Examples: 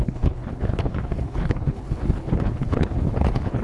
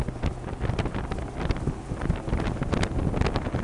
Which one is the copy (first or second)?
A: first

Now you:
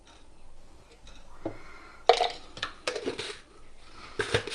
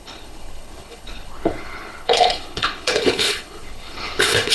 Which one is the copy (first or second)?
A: second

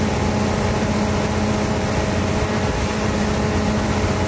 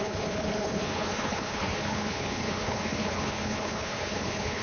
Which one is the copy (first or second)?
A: second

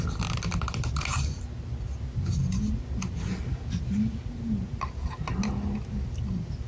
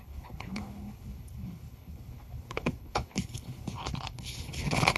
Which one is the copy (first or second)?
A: second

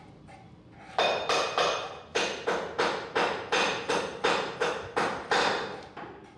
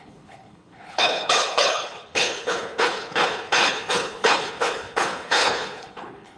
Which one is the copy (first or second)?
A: second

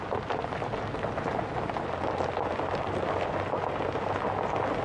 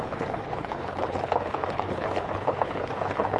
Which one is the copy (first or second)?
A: second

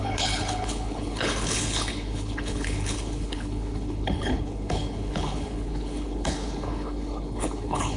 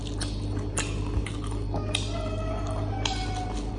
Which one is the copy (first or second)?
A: first